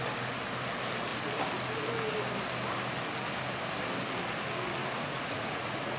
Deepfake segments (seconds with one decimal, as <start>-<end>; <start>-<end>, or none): 4.8-6.0